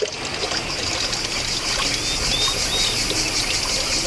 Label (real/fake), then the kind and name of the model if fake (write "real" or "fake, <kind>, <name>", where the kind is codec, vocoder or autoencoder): real